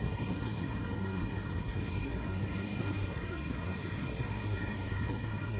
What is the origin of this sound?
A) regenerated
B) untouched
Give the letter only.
A